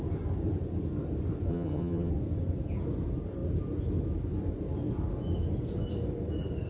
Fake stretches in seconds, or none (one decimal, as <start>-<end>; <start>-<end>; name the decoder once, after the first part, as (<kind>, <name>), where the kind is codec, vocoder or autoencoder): 1.5-2.1 (vocoder, HiFi-GAN)